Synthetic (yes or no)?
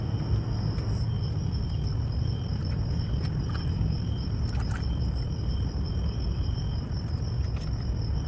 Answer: yes